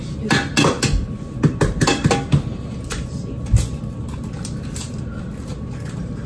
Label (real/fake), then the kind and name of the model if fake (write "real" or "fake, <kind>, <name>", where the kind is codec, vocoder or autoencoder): real